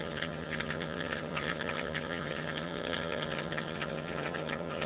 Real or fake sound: fake